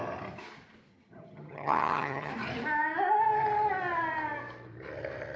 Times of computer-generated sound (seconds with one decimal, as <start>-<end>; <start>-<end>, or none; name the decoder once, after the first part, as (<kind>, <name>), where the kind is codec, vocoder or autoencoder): 0.9-2.3 (vocoder, HiFi-GAN)